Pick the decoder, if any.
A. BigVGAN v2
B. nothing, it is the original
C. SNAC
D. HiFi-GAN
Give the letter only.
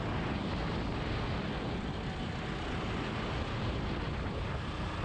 B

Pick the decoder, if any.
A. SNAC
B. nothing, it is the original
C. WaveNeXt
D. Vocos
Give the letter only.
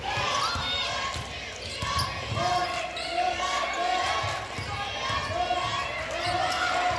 B